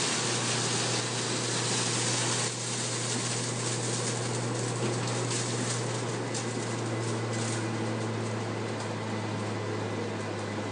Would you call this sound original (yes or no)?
yes